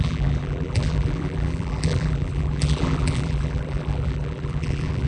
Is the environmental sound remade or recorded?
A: remade